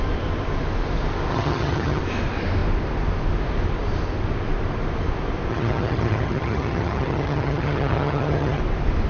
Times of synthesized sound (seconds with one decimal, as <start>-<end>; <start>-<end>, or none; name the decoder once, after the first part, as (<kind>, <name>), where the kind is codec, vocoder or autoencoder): 1.3-2.0 (vocoder, HiFi-GAN); 5.5-8.6